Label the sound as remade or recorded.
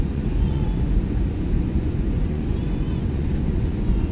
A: remade